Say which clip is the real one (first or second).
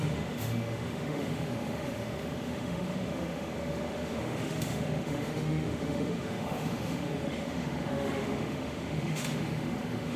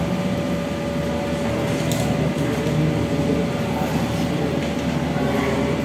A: second